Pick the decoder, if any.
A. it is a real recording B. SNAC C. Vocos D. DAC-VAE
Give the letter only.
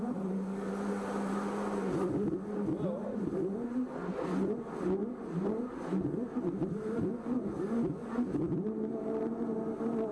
A